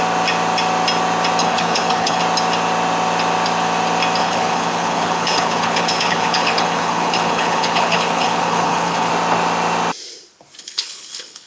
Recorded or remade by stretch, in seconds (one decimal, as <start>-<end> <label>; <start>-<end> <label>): 0.0-1.4 recorded; 1.4-2.2 remade; 2.2-4.2 recorded; 4.2-9.1 remade; 9.1-10.6 recorded; 10.6-11.5 remade